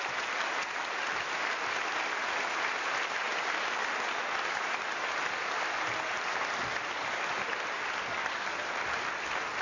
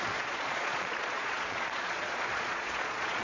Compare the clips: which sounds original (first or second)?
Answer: first